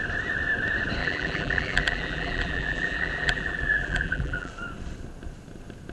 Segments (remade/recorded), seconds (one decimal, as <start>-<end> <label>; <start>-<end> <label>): 0.0-1.0 recorded; 1.0-4.5 remade; 4.5-5.9 recorded

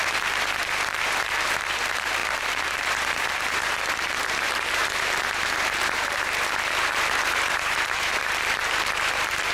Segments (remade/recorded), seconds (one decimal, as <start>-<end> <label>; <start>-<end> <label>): 0.0-9.5 remade

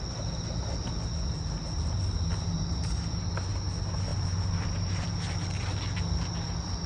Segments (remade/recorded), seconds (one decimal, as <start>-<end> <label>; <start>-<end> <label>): 0.0-4.1 recorded; 4.1-5.1 remade; 5.1-6.9 recorded

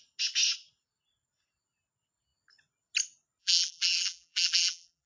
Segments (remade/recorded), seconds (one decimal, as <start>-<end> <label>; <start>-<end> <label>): 0.0-3.4 recorded; 3.4-5.1 remade

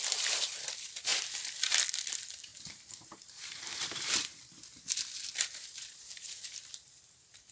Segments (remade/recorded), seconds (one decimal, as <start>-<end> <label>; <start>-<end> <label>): 0.0-1.1 remade; 1.1-2.1 recorded; 2.1-4.4 remade; 4.4-5.6 recorded; 5.6-7.5 remade

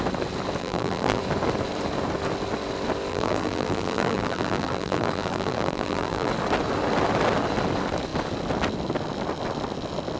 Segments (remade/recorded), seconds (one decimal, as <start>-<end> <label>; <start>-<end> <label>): 0.0-0.6 recorded; 0.6-1.2 remade; 1.2-3.1 recorded; 3.1-6.3 remade; 6.3-10.2 recorded

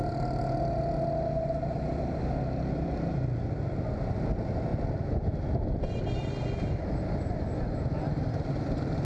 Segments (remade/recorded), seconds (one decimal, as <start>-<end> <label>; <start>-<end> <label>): 0.0-9.0 recorded